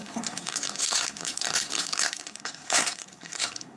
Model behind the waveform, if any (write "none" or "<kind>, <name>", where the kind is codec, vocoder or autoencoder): codec, SNAC